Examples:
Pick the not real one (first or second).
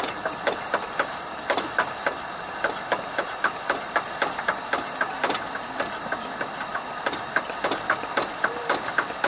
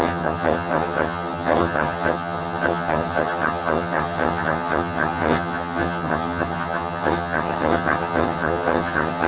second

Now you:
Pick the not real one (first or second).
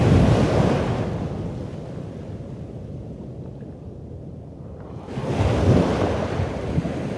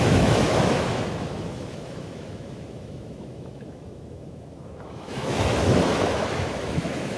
second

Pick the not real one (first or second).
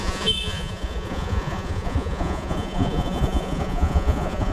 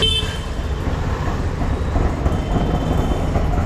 first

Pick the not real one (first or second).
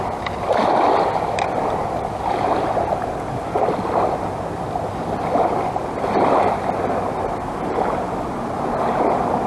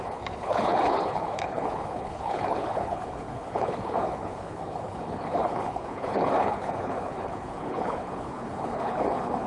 second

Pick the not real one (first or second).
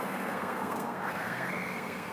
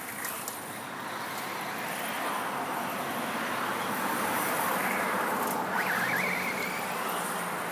first